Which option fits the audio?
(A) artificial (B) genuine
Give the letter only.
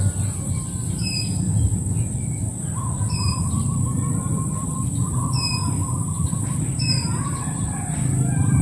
A